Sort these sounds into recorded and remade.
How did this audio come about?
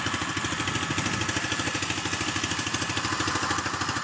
recorded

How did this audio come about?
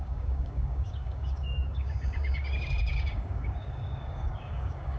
remade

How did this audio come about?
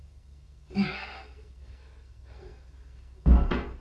remade